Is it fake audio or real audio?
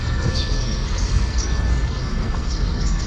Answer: fake